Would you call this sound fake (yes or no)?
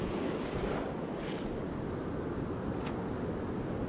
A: no